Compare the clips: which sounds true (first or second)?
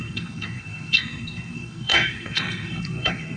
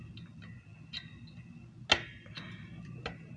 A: second